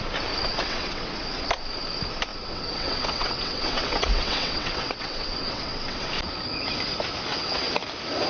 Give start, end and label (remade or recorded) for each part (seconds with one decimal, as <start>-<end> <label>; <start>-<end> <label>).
0.0-0.5 recorded; 0.5-1.2 remade; 1.2-2.3 recorded; 2.3-6.1 remade; 6.1-7.3 recorded; 7.3-7.8 remade; 7.8-8.3 recorded